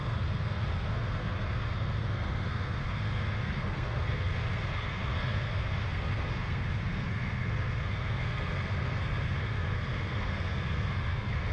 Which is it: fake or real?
fake